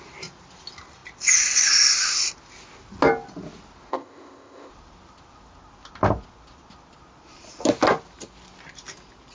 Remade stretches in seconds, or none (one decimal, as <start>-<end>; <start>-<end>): 3.9-4.7